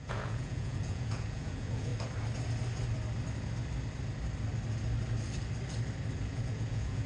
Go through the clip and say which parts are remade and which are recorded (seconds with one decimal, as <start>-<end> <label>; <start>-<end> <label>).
0.0-1.9 remade; 1.9-6.2 recorded; 6.2-7.1 remade